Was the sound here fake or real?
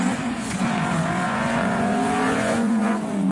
fake